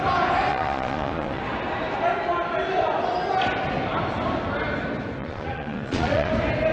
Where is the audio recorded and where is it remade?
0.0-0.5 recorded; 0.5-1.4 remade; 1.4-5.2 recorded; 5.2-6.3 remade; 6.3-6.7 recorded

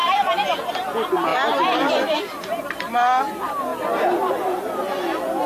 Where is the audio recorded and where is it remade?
0.0-5.5 recorded

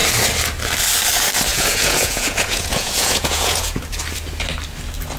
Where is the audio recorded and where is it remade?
0.0-1.5 recorded; 1.5-3.8 remade; 3.8-5.2 recorded

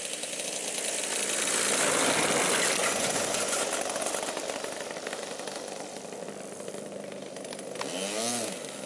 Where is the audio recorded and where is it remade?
0.0-2.8 recorded; 2.8-3.7 remade; 3.7-8.9 recorded

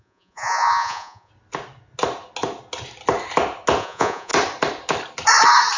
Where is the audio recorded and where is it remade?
0.0-1.3 remade; 1.3-3.8 recorded; 3.8-4.3 remade; 4.3-5.8 recorded